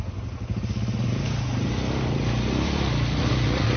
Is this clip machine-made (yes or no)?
no